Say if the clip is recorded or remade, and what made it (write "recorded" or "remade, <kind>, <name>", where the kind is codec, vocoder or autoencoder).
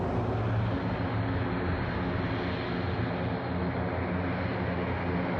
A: recorded